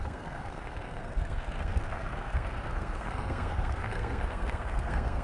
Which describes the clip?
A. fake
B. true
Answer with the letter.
A